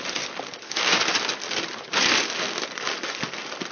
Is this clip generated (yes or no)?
no